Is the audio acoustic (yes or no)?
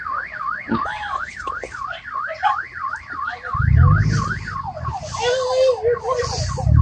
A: yes